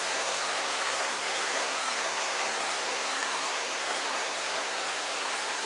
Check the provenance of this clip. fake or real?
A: fake